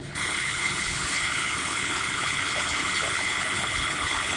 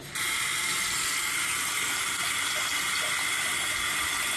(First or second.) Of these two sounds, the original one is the second